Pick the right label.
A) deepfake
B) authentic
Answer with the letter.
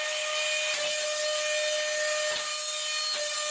B